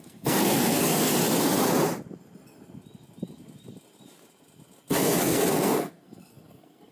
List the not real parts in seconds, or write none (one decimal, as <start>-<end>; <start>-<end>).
0.0-1.1; 4.9-6.9